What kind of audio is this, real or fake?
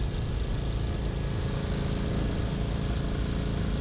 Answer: real